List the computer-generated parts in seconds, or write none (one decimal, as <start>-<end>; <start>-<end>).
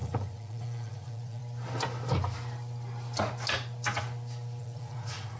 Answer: 0.0-1.4; 4.6-5.4